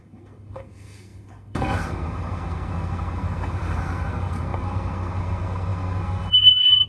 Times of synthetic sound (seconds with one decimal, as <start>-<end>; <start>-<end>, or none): 0.0-6.9